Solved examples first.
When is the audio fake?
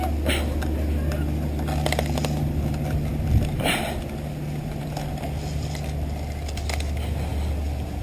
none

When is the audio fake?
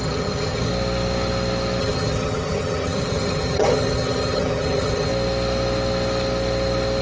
0.0-0.7; 1.8-5.1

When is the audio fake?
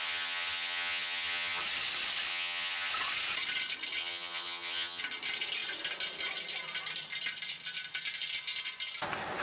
0.0-1.6; 2.3-2.9; 4.0-5.0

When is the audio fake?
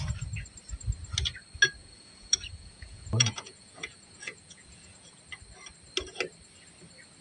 1.8-5.2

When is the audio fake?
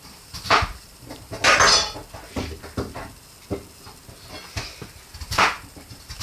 0.0-1.4; 5.1-6.2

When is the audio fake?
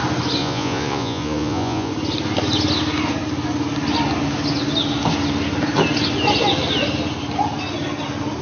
0.4-1.9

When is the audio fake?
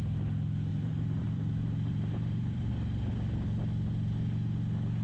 0.7-2.7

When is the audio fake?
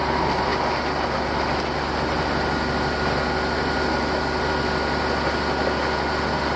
none